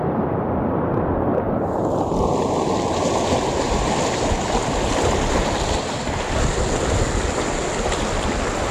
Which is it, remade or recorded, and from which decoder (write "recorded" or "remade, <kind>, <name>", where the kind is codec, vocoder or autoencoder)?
recorded